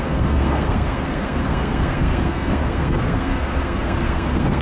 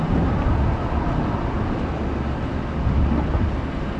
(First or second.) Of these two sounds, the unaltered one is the second